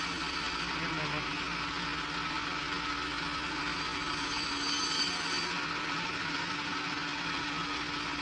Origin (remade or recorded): recorded